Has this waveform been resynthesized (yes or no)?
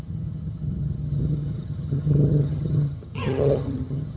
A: yes